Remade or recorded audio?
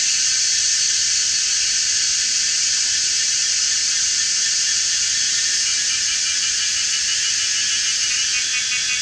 recorded